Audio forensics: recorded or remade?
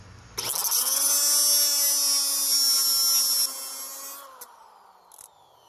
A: recorded